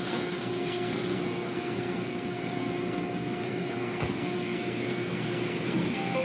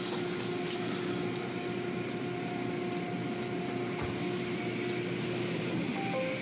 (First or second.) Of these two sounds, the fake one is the first